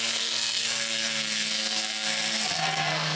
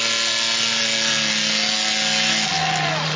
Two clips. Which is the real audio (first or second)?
second